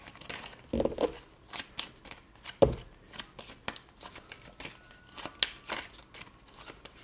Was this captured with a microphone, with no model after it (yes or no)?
yes